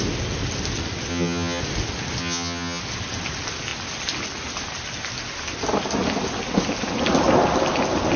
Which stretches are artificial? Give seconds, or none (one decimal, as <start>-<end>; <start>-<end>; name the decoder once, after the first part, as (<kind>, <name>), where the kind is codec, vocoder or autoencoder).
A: 1.1-1.6 (vocoder, HiFi-GAN); 2.2-2.8